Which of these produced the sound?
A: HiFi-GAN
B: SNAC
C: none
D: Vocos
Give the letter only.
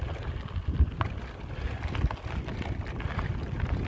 C